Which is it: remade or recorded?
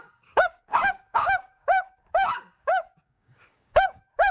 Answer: remade